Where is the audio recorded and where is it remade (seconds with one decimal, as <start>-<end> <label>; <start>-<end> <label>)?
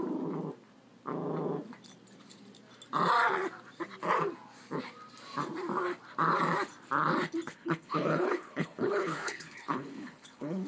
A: 0.0-7.5 recorded; 7.5-10.7 remade